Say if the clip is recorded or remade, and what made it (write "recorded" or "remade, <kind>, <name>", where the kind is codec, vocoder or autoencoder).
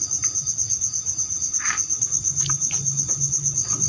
recorded